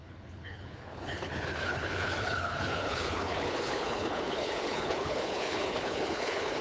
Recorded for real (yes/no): no